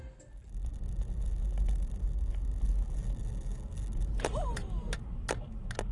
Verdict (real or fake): real